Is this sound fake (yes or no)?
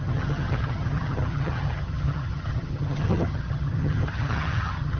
yes